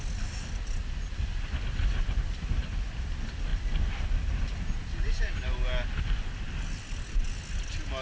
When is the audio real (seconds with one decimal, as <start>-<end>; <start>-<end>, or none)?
0.0-8.0